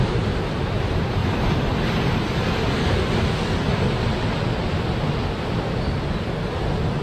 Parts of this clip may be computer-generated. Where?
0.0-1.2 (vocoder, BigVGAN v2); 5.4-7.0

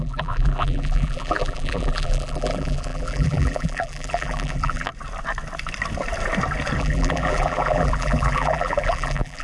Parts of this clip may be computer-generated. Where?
0.0-4.9 (vocoder, BigVGAN v2); 6.8-9.4

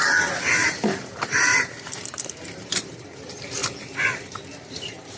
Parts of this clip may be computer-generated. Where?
0.0-3.6 (vocoder, BigVGAN v2); 4.8-5.2

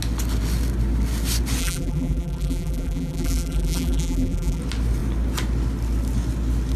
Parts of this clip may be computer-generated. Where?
1.6-4.6 (vocoder, BigVGAN v2)

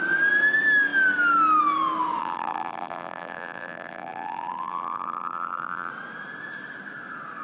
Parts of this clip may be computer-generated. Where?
2.2-5.9 (vocoder, BigVGAN v2)